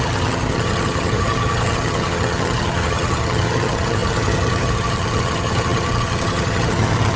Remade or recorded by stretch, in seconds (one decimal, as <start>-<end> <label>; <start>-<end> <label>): 0.0-7.2 remade